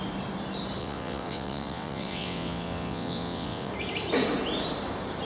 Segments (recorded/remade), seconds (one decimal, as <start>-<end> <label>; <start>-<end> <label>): 0.0-0.8 recorded; 0.8-3.7 remade; 3.7-5.2 recorded